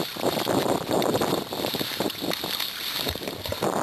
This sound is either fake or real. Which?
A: fake